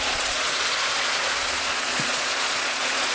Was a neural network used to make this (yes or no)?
yes